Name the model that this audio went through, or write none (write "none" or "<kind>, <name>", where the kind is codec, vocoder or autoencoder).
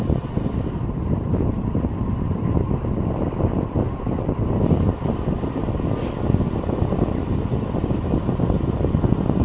none